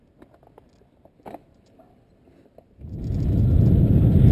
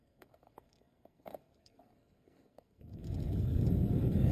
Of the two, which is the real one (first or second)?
first